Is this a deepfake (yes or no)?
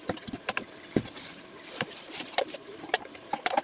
yes